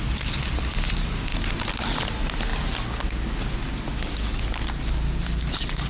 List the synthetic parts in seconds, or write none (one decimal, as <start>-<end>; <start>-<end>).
none